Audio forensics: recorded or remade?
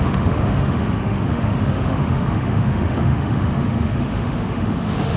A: remade